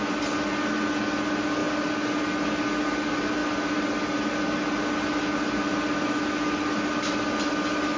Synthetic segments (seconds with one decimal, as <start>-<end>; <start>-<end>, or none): none